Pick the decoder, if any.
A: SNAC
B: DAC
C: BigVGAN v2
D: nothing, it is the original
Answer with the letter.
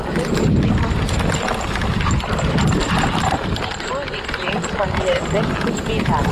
D